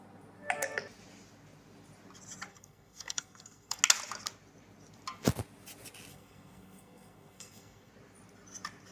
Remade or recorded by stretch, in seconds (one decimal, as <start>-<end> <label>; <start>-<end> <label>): 0.0-2.5 recorded; 2.5-3.8 remade; 3.8-6.1 recorded; 6.1-7.9 remade; 7.9-8.9 recorded